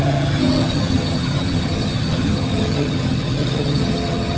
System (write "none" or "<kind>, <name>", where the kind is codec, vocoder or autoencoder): vocoder, HiFi-GAN